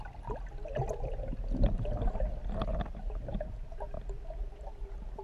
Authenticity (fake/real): real